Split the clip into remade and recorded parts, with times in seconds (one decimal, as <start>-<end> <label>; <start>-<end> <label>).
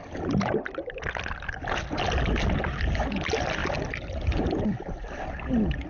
0.0-3.6 remade; 3.6-4.4 recorded; 4.4-5.9 remade